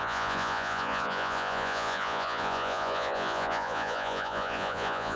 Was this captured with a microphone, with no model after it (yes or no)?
no